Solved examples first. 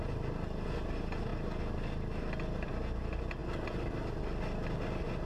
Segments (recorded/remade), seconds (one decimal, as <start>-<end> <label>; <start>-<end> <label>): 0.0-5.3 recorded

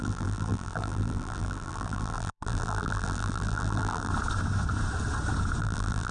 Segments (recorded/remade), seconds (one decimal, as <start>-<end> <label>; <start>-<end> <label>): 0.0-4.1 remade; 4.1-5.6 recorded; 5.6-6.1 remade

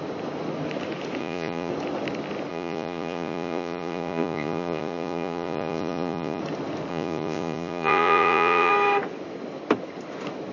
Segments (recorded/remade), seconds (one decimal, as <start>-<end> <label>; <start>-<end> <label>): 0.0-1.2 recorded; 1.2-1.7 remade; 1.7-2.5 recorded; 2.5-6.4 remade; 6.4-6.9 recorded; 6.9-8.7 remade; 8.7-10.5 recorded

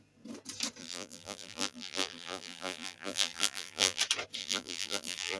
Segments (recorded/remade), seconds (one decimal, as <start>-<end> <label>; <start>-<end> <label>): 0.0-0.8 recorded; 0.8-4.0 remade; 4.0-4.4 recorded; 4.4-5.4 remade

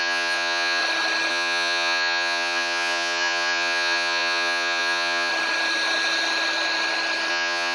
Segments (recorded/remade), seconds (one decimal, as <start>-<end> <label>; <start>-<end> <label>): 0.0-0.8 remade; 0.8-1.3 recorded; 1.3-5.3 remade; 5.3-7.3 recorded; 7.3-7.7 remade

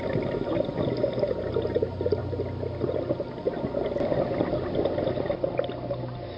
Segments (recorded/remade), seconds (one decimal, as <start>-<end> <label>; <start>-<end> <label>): 0.0-6.4 recorded